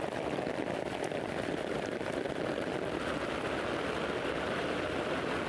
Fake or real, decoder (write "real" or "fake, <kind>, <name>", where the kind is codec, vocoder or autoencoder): real